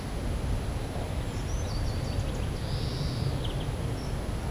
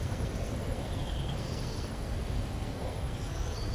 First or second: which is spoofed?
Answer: second